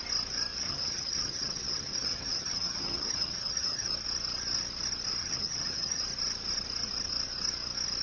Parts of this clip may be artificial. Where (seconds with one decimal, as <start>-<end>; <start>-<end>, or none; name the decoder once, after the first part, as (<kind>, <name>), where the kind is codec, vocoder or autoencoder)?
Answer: 0.5-3.9 (vocoder, HiFi-GAN); 5.2-6.0